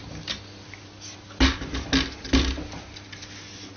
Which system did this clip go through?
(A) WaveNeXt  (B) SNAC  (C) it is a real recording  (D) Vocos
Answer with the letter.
C